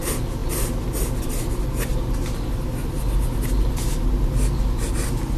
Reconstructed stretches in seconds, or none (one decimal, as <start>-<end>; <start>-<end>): none